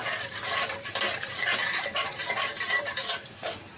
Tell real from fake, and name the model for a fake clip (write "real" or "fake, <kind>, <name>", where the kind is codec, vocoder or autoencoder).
fake, vocoder, BigVGAN v2